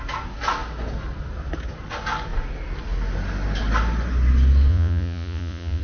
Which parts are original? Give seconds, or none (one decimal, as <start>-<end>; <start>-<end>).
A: 0.0-4.7